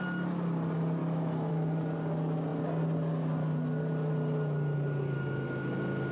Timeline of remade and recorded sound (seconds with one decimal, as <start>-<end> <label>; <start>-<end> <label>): 0.0-1.0 recorded; 1.0-1.5 remade; 1.5-6.1 recorded

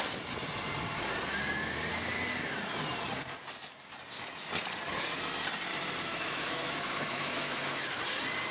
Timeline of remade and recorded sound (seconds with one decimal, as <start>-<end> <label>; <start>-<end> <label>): 0.0-6.1 recorded; 6.1-8.0 remade; 8.0-8.5 recorded

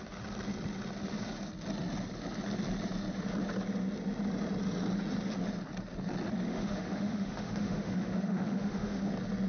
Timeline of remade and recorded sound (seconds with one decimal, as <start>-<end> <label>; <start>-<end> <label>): 0.0-6.5 recorded; 6.5-9.1 remade; 9.1-9.5 recorded

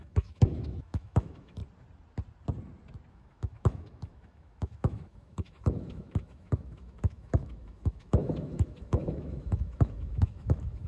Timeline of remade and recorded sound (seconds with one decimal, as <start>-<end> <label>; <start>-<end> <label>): 0.0-1.6 remade; 1.6-3.1 recorded; 3.1-10.9 remade

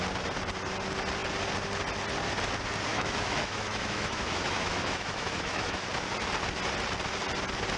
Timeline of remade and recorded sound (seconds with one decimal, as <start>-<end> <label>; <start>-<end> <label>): 0.0-2.9 recorded; 2.9-5.9 remade; 5.9-7.8 recorded

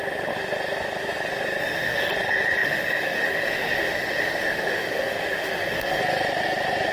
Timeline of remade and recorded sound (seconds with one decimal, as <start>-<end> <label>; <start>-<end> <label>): 0.0-1.6 recorded; 1.6-2.1 remade; 2.1-2.6 recorded; 2.6-6.0 remade; 6.0-6.9 recorded